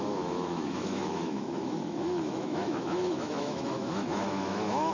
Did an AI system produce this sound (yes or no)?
yes